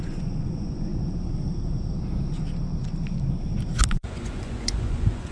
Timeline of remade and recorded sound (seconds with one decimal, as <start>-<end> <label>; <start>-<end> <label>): 0.0-0.9 remade; 0.9-3.9 recorded; 3.9-5.3 remade